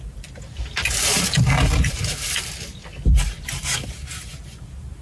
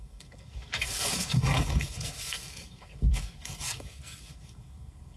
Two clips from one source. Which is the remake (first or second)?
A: second